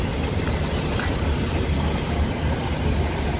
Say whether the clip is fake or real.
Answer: real